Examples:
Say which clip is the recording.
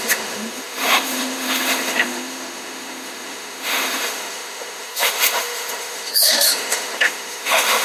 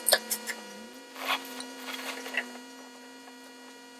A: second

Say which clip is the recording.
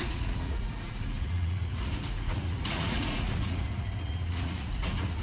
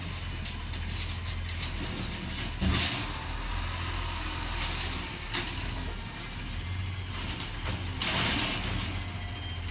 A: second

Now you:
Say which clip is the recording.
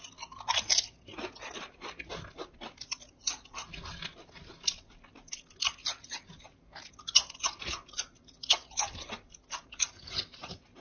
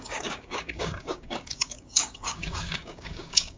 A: first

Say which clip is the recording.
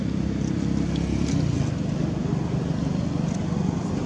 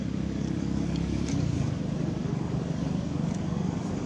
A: first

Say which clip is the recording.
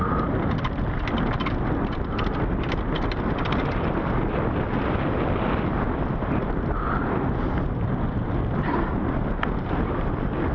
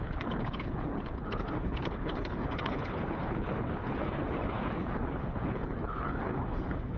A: first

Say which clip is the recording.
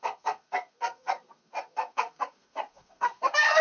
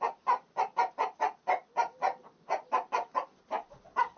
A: second